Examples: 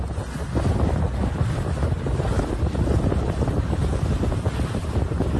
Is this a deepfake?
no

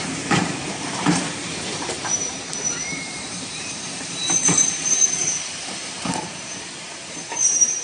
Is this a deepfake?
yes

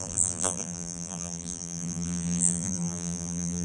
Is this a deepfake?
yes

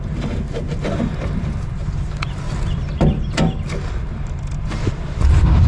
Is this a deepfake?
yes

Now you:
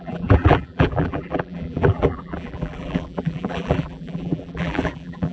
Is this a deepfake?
yes